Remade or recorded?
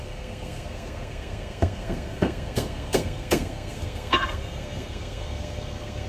remade